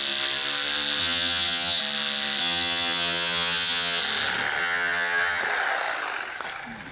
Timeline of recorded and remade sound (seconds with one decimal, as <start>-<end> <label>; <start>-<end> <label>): 0.0-1.0 recorded; 1.0-1.8 remade; 1.8-2.4 recorded; 2.4-4.0 remade; 4.0-4.6 recorded; 4.6-5.4 remade; 5.4-6.9 recorded